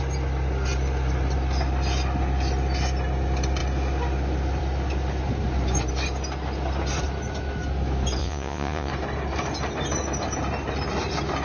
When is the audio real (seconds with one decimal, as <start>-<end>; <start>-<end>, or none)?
0.0-8.2; 8.9-11.4